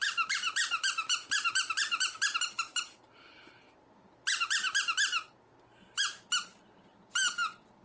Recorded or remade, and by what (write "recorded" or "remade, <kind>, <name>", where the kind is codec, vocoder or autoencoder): recorded